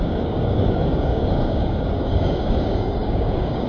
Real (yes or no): no